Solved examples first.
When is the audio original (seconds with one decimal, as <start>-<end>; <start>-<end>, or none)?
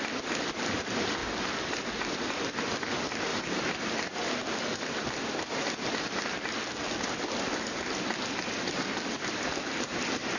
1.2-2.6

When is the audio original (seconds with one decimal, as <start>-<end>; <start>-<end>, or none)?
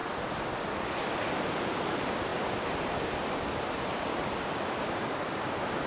0.0-1.2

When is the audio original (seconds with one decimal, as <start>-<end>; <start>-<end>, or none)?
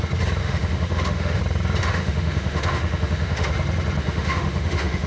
0.0-0.4; 1.4-1.8; 3.5-4.0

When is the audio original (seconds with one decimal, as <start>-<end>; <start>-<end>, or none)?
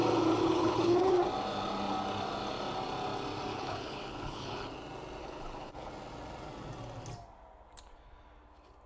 0.0-0.4; 1.1-3.5; 4.7-5.2; 5.9-8.9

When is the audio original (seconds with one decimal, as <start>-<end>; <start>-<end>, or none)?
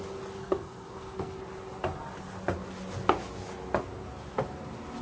0.0-0.4; 1.4-5.0